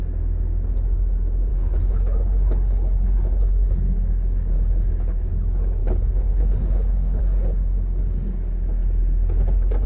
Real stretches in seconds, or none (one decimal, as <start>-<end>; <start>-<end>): 0.0-1.5; 5.3-5.8; 7.2-9.9